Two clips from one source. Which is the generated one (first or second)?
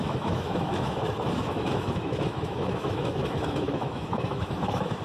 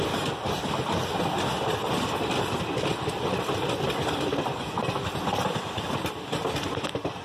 first